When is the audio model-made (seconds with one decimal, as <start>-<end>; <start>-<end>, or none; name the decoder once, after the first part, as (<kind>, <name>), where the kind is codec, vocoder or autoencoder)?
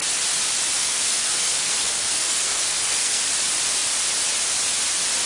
0.8-3.2 (codec, SNAC)